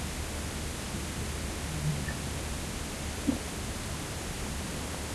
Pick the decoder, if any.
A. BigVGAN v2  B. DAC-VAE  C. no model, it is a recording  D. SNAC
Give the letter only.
C